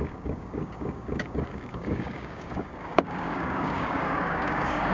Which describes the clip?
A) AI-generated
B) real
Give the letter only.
A